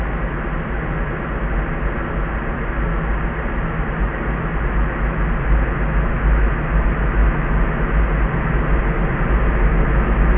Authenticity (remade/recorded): recorded